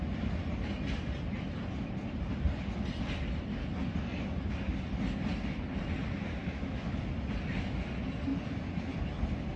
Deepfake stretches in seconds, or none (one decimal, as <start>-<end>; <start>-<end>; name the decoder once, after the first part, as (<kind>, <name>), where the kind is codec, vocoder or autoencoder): 6.4-7.0 (autoencoder, DAC-VAE)